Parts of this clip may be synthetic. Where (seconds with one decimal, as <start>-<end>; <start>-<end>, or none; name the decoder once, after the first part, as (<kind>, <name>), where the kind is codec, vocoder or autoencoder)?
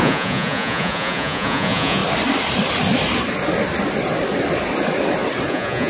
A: 0.0-2.0 (vocoder, Vocos); 5.5-5.9